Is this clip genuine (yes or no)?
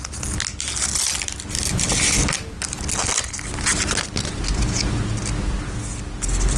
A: yes